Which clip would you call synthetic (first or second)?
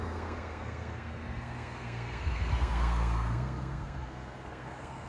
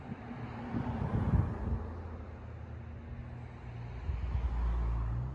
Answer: first